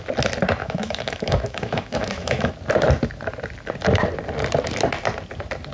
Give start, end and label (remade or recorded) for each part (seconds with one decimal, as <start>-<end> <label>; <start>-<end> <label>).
0.0-0.6 recorded; 0.6-2.5 remade; 2.5-5.7 recorded